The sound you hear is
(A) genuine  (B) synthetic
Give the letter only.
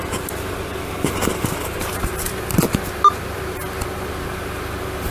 A